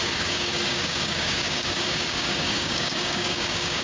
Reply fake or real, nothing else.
fake